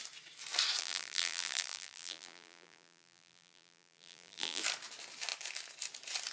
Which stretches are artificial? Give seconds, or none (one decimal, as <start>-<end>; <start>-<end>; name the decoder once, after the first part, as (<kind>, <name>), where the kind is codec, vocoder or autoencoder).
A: 0.8-4.6 (vocoder, BigVGAN v2)